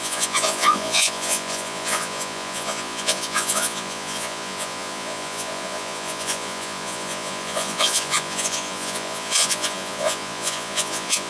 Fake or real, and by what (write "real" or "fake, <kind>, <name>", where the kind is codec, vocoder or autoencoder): fake, vocoder, Vocos